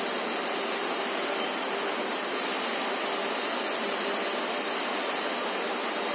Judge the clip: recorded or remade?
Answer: recorded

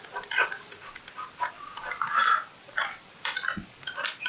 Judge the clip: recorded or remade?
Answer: recorded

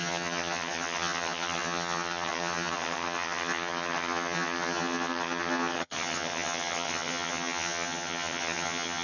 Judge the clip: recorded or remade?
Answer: remade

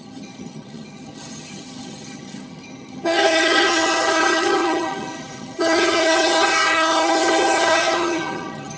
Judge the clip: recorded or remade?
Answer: remade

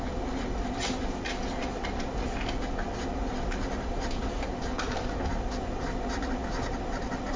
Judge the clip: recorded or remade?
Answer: recorded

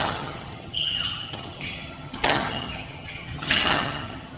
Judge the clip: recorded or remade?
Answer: remade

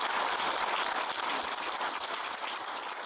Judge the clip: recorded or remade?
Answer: recorded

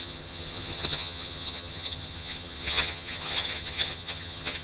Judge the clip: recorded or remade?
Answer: remade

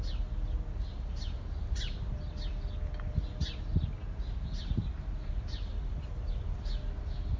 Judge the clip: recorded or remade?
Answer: recorded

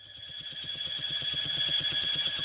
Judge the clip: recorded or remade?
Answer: remade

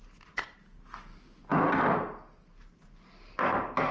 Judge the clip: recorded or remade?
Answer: recorded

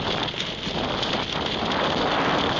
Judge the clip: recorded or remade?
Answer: recorded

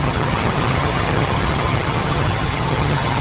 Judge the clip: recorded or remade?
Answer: remade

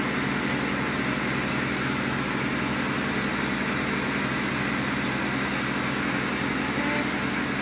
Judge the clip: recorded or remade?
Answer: recorded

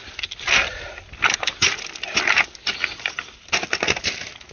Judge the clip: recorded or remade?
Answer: recorded